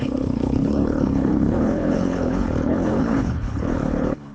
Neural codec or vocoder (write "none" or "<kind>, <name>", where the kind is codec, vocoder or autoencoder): codec, HILCodec